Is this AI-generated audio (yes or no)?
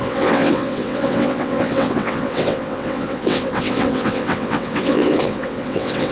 yes